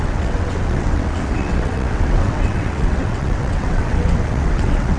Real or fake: fake